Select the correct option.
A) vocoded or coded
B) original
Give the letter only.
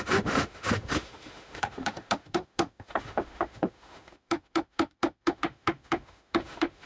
A